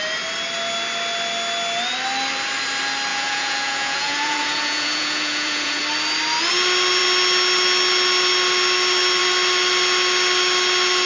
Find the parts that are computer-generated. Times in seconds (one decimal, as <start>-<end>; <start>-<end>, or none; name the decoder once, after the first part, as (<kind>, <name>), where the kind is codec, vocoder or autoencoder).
3.1-5.8 (vocoder, Vocos)